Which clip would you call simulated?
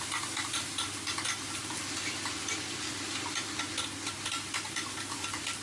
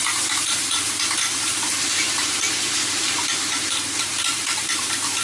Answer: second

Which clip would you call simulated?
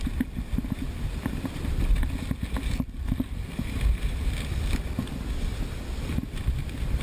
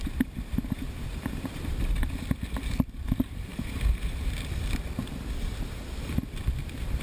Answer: second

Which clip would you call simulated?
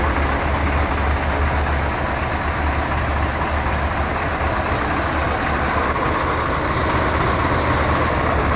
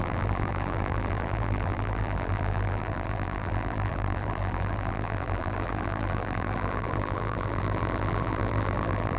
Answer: second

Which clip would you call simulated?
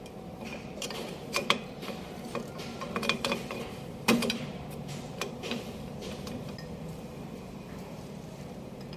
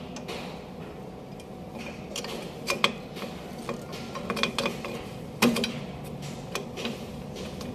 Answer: first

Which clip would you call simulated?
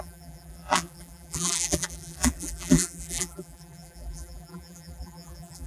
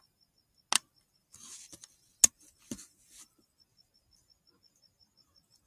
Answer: first